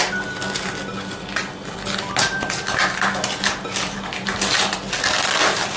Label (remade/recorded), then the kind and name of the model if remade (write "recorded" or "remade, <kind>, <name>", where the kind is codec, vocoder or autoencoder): recorded